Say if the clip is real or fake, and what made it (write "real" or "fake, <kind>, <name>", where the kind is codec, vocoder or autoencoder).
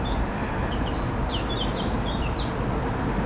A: fake, vocoder, BigVGAN v2